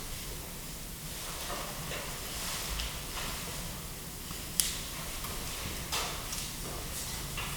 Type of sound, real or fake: real